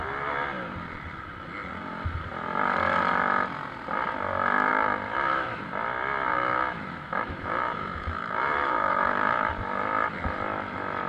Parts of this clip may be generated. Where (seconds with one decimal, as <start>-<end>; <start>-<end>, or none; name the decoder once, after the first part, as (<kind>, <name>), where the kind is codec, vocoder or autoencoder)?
4.7-5.6 (autoencoder, DAC-VAE); 6.3-9.5